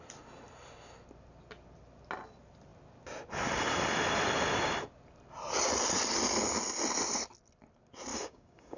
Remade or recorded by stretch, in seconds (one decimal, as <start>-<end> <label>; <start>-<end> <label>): 0.0-8.1 recorded; 8.1-8.8 remade